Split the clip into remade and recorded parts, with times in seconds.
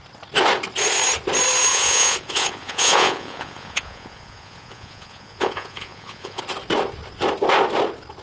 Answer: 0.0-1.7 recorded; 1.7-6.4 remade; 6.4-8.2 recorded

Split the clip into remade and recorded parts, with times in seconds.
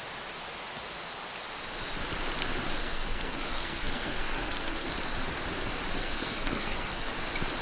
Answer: 0.0-2.8 recorded; 2.8-4.9 remade; 4.9-6.0 recorded; 6.0-7.1 remade; 7.1-7.6 recorded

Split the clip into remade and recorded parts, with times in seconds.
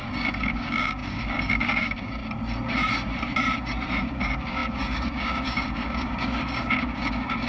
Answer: 0.0-2.2 remade; 2.2-4.0 recorded; 4.0-7.5 remade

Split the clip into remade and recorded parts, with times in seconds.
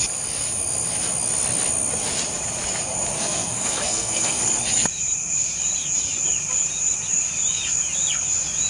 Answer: 0.0-3.2 recorded; 3.2-4.4 remade; 4.4-8.7 recorded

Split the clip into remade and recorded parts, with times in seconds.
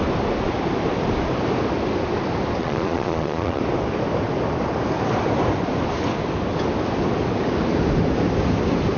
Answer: 0.0-2.6 recorded; 2.6-3.6 remade; 3.6-9.0 recorded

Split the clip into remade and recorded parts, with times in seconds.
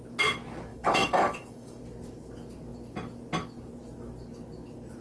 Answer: 0.0-0.7 recorded; 0.7-1.8 remade; 1.8-5.0 recorded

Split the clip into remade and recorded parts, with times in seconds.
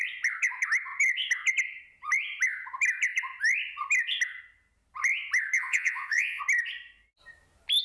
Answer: 0.0-5.6 recorded; 5.6-6.4 remade; 6.4-7.8 recorded